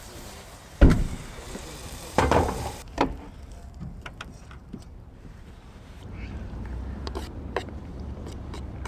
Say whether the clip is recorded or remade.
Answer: remade